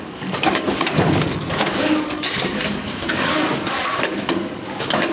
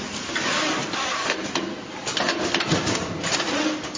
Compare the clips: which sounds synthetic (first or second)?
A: first